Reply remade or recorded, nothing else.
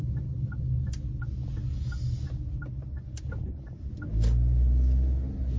recorded